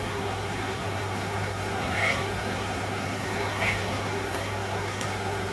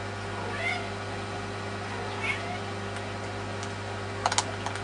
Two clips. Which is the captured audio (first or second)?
second